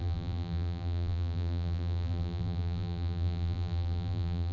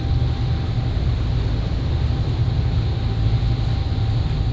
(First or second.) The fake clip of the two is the first